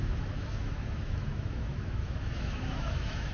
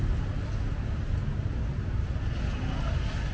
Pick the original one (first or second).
second